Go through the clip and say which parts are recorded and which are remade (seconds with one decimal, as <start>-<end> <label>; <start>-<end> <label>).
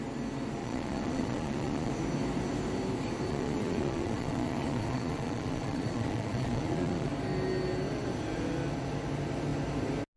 0.0-0.6 recorded; 0.6-1.9 remade; 1.9-3.3 recorded; 3.3-7.1 remade; 7.1-10.2 recorded